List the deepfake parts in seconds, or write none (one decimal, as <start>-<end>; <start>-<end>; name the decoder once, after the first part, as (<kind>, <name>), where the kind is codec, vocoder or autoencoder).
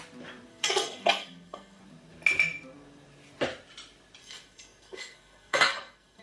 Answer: 0.5-1.8 (codec, SNAC); 4.2-6.2